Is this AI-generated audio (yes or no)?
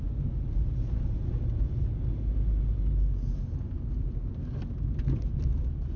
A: no